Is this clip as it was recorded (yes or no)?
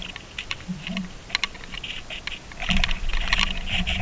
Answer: yes